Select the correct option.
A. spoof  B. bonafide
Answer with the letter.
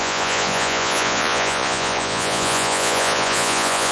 A